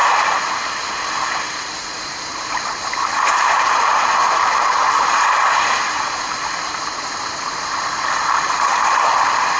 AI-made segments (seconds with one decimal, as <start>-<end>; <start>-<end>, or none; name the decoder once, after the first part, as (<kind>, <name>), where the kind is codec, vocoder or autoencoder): 0.0-0.8 (vocoder, BigVGAN v2); 1.8-2.4; 3.9-4.7